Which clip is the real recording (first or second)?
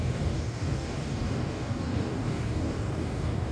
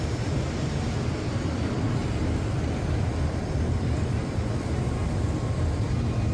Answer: second